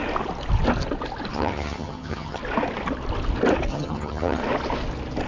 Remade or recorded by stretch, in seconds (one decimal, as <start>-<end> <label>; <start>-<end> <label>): 0.0-1.3 recorded; 1.3-2.4 remade; 2.4-3.7 recorded; 3.7-4.4 remade; 4.4-5.3 recorded